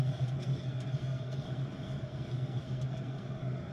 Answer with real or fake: fake